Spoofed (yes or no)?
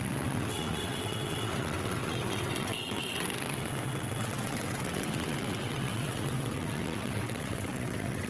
yes